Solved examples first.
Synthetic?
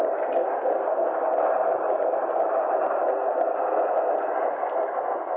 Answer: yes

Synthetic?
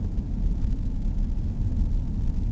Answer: no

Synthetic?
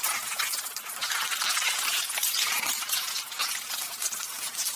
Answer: no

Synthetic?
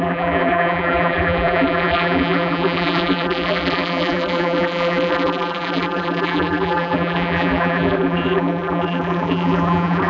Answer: yes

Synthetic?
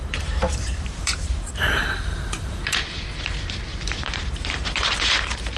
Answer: yes